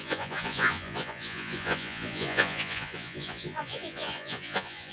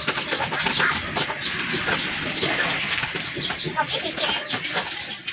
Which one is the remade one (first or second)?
first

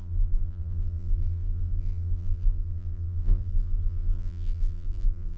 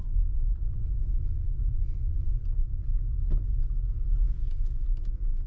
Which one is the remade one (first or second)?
first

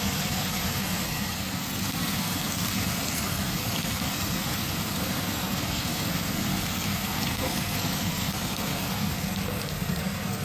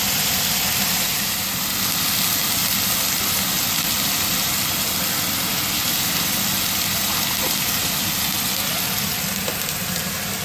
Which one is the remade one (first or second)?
first